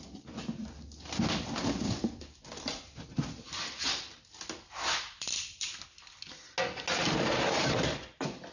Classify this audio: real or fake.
real